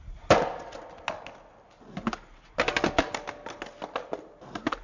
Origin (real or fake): real